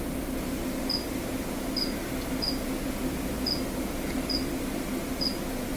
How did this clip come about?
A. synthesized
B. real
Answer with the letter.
B